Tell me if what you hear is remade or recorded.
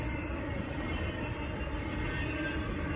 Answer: recorded